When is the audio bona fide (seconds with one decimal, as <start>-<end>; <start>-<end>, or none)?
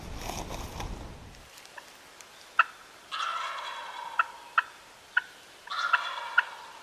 0.0-6.8